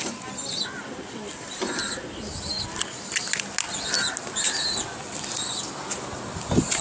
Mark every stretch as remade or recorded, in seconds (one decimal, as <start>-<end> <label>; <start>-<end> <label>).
0.0-6.8 recorded